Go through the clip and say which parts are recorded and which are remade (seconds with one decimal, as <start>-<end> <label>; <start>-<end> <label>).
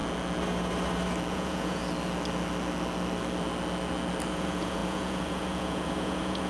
0.0-1.3 recorded; 1.3-1.8 remade; 1.8-4.3 recorded; 4.3-6.5 remade